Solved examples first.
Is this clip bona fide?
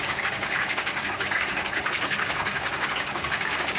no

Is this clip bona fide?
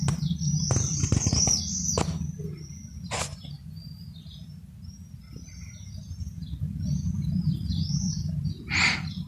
yes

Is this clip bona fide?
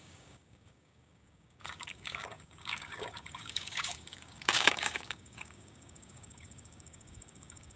no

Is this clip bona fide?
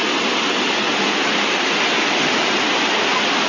yes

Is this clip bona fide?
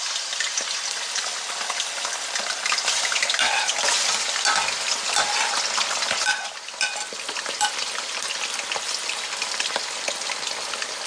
yes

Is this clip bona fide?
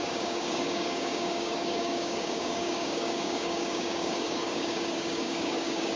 no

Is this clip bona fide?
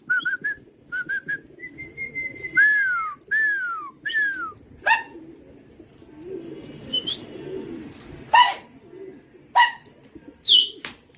yes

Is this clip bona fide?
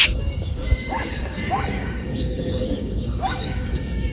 no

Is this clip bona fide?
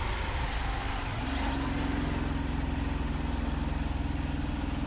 yes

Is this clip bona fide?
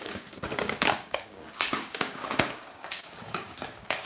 no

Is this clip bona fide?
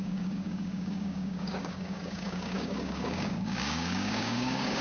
no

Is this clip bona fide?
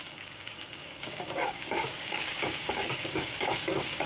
no